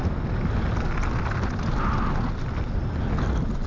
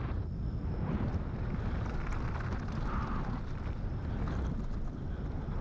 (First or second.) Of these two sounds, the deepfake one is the second